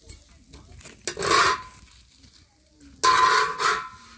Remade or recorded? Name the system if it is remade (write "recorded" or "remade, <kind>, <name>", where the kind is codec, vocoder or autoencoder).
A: recorded